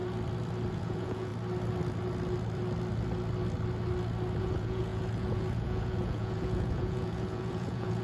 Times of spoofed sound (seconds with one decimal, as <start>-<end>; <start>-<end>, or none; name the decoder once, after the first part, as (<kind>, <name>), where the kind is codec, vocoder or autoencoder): 0.7-1.3 (vocoder, Vocos); 4.4-8.0

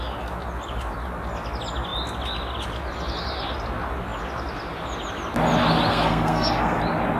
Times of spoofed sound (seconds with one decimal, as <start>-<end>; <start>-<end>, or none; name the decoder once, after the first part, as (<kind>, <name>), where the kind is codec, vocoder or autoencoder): 5.9-6.8 (codec, SNAC)

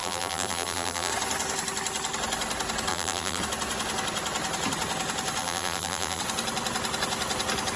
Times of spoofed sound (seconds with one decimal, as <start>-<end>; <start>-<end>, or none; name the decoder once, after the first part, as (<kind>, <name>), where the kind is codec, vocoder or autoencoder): 0.0-1.1 (vocoder, BigVGAN v2); 2.9-3.4; 5.4-6.2